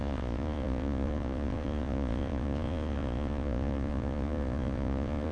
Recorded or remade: remade